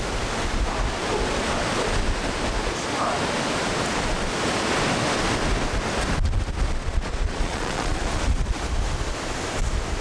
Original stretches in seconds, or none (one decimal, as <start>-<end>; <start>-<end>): 0.0-6.8; 8.5-10.0

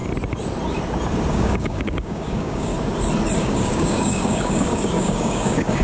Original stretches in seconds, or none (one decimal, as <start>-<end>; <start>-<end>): 0.0-1.3; 2.7-3.4

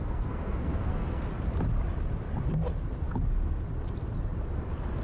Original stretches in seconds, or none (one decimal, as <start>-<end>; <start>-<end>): 1.2-5.0

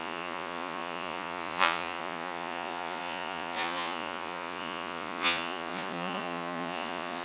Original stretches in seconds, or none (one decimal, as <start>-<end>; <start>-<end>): none

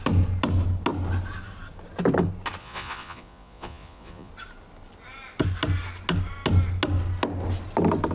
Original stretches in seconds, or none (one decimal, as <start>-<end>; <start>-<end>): 0.0-2.6; 4.3-8.1

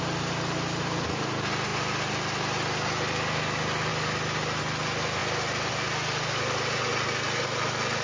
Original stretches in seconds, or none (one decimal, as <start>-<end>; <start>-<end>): 0.0-8.0

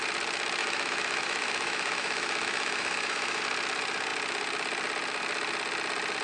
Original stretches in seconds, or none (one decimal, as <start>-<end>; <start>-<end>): 0.0-0.6; 3.4-6.2